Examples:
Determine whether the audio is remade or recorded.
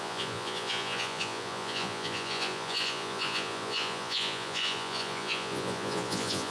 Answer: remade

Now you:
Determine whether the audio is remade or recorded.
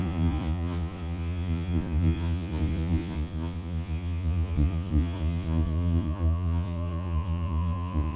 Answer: remade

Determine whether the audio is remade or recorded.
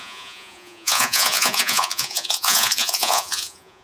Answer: remade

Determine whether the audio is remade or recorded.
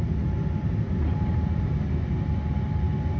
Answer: recorded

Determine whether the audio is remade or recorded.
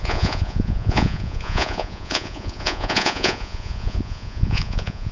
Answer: remade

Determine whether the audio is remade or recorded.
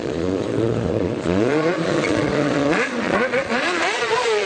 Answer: remade